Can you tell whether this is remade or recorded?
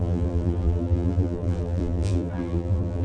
remade